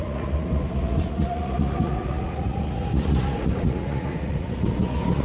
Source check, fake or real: fake